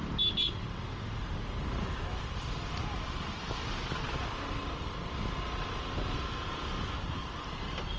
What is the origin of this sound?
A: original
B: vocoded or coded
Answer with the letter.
A